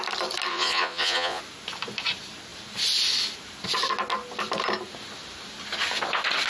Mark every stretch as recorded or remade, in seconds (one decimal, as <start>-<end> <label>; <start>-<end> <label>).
0.0-0.5 recorded; 0.5-1.4 remade; 1.4-6.5 recorded